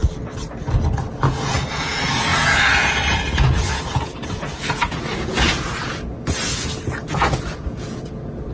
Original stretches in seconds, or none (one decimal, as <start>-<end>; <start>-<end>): 0.0-1.1